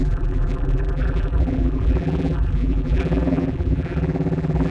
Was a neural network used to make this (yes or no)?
yes